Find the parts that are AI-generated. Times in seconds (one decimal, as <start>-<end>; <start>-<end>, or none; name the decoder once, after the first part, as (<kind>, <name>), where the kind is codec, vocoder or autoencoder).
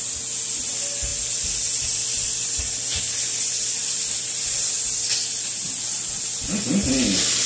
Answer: none